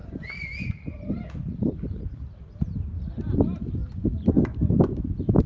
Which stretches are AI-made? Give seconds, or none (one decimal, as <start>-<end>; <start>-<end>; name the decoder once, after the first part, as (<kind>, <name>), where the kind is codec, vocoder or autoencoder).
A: none